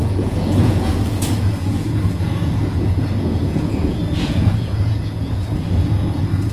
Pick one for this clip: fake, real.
fake